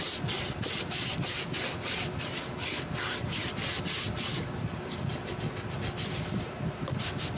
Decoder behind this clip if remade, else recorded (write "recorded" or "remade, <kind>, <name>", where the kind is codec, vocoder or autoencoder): recorded